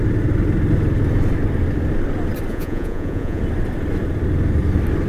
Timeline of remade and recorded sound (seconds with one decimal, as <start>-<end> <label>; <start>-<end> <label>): 0.0-2.5 recorded; 2.5-3.4 remade; 3.4-5.1 recorded